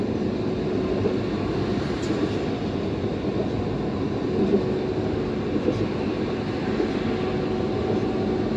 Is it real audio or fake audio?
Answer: real